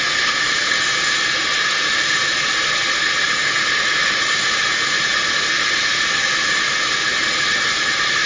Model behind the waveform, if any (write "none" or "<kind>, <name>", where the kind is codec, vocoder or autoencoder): vocoder, BigVGAN v2